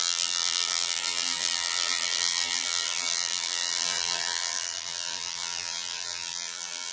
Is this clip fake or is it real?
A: fake